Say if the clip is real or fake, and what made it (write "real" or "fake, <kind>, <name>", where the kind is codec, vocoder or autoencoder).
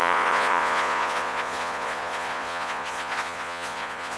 fake, vocoder, Vocos